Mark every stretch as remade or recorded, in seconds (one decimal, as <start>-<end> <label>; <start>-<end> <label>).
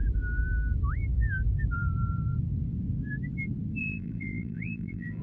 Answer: 0.0-3.8 recorded; 3.8-5.2 remade